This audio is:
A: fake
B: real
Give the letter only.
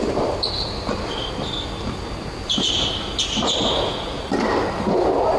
B